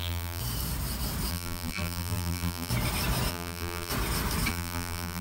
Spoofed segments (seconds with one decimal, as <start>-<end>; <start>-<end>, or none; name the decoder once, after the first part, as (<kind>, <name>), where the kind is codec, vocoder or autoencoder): 0.0-0.4 (vocoder, BigVGAN v2); 1.3-2.7; 3.3-3.9; 4.5-5.2